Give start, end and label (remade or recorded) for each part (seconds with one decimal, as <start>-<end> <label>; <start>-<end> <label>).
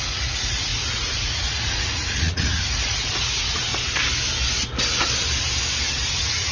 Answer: 0.0-3.7 remade; 3.7-5.9 recorded; 5.9-6.5 remade